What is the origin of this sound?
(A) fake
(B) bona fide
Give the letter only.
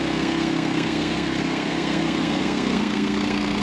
A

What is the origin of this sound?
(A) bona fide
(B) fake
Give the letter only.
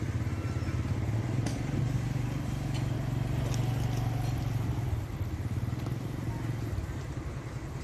A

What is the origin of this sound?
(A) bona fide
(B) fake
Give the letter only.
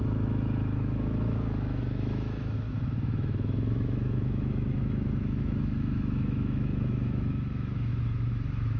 B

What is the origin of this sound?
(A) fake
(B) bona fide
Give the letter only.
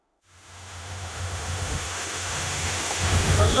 A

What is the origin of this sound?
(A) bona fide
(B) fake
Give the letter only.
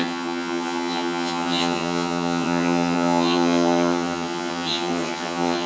B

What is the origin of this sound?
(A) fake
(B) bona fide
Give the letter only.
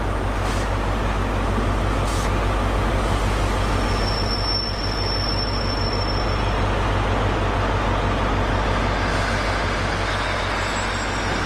B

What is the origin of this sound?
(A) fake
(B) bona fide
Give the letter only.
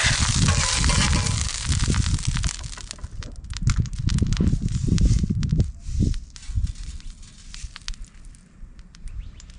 B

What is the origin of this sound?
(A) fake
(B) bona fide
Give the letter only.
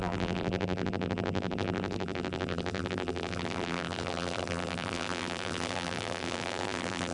A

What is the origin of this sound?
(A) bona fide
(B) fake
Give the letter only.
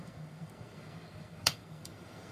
B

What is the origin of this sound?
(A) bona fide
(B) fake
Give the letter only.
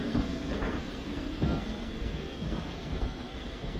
B